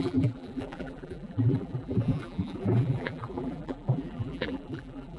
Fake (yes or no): yes